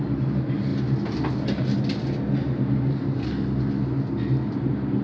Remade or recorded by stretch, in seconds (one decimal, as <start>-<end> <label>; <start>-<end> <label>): 0.0-5.0 recorded